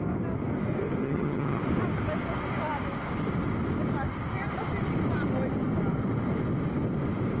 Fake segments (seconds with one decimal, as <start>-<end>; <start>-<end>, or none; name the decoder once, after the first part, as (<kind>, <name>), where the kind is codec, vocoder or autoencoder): 1.0-1.6 (vocoder, HiFi-GAN)